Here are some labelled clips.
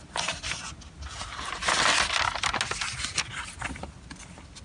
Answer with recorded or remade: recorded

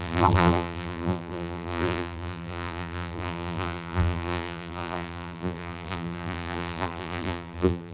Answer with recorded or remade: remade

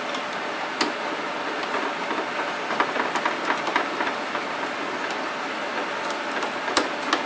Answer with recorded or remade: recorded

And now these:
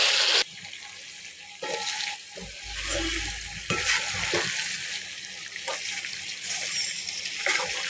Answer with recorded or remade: recorded